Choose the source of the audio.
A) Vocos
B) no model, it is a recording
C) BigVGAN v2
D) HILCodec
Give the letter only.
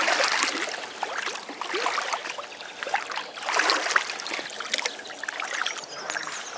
B